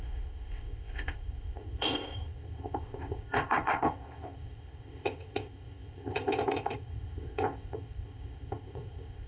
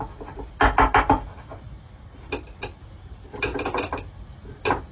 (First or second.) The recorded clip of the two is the second